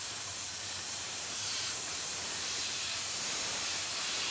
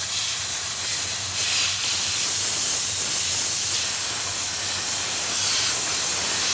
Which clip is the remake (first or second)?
first